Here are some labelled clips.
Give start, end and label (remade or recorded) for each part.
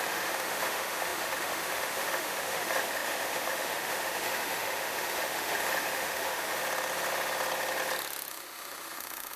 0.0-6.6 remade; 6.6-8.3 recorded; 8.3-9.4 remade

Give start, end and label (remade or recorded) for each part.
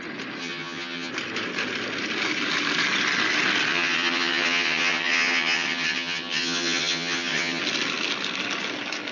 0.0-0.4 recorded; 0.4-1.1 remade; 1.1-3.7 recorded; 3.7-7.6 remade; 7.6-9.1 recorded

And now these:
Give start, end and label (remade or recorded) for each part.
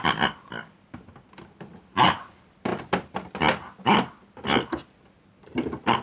0.0-6.0 recorded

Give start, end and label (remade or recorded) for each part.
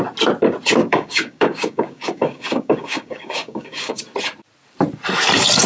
0.0-0.8 recorded; 0.8-4.0 remade; 4.0-5.7 recorded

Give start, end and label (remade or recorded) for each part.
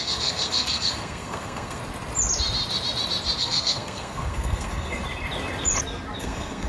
0.0-1.8 remade; 1.8-3.4 recorded; 3.4-5.0 remade; 5.0-6.2 recorded; 6.2-6.7 remade